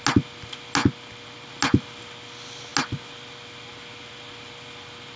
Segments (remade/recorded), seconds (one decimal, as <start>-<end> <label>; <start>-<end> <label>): 0.0-5.2 recorded